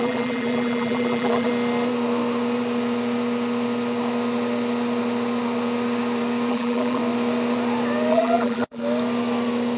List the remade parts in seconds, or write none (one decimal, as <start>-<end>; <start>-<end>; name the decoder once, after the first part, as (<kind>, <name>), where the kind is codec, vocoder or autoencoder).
0.0-1.5 (vocoder, BigVGAN v2); 6.5-7.0; 8.1-8.8